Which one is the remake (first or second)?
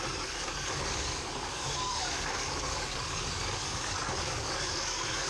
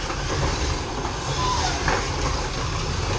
first